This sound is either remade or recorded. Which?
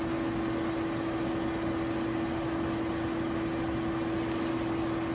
recorded